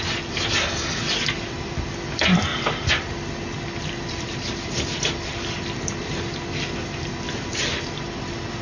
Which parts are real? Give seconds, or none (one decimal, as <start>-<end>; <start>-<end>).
0.0-8.6